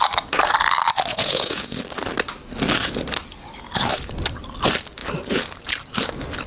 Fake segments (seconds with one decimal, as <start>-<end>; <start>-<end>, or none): 1.1-1.8